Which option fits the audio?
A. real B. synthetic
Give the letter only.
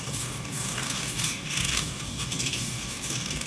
B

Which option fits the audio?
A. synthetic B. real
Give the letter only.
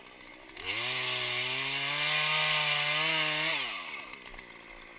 B